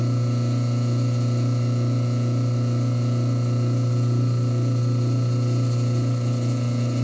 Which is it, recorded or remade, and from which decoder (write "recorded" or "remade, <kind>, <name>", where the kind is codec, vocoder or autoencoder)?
recorded